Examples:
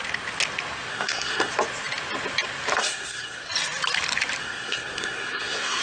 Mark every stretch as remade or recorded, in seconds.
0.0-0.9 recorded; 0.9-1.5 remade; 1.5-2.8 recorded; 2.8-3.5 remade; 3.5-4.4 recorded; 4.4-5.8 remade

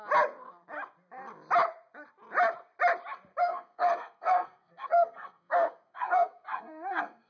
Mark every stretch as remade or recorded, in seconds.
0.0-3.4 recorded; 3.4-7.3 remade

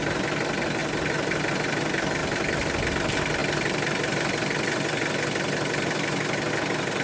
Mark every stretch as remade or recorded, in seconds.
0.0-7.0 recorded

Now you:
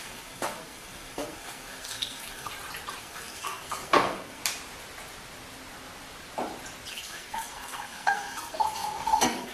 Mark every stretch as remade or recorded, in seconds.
0.0-2.5 remade; 2.5-3.0 recorded; 3.0-4.4 remade; 4.4-6.9 recorded; 6.9-9.5 remade

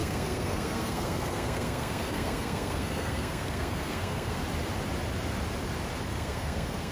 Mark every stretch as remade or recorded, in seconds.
0.0-4.4 remade; 4.4-6.1 recorded; 6.1-6.9 remade

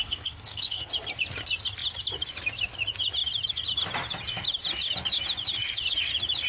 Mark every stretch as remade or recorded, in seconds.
0.0-0.9 remade; 0.9-6.5 recorded

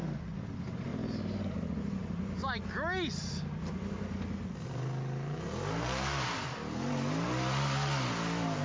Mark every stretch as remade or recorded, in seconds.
0.0-8.6 recorded

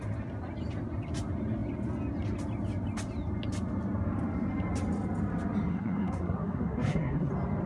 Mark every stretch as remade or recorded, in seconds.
0.0-5.7 recorded; 5.7-7.3 remade; 7.3-7.7 recorded